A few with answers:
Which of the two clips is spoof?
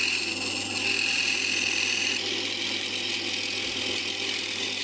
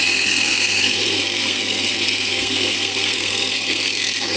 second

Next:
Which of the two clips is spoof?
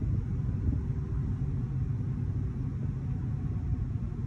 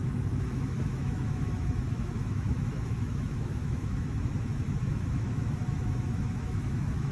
second